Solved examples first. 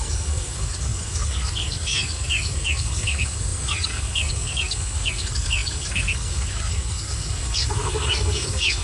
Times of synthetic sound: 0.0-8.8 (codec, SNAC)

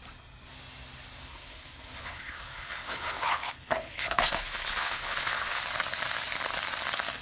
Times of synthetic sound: 1.3-5.6 (codec, HILCodec)

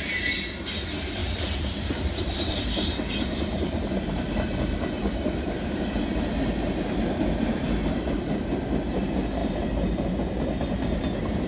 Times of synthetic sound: 1.2-2.5 (vocoder, BigVGAN v2)

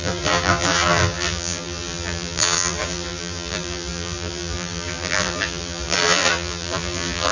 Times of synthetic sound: 0.0-7.3 (vocoder, BigVGAN v2)